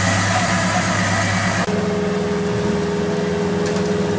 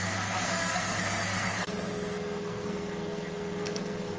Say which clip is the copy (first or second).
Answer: second